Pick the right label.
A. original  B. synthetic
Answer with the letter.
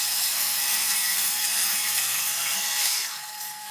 B